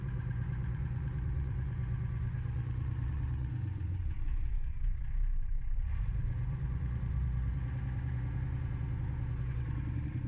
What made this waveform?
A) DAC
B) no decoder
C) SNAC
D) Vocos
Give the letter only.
D